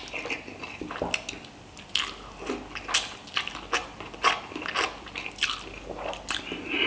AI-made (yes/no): no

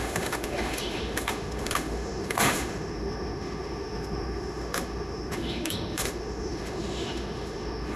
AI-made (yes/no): yes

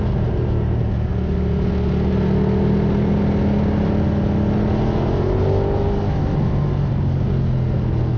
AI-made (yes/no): no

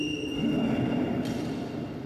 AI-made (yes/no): no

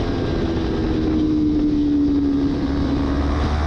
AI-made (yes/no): no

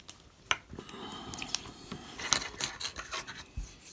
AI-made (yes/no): no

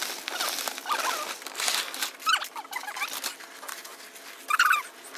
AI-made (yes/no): no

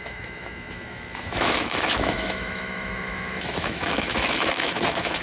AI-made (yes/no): yes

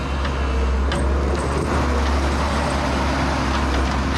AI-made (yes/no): no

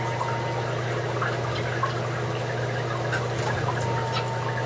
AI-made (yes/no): no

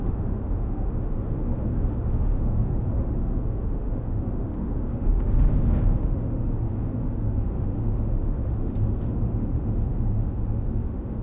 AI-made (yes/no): yes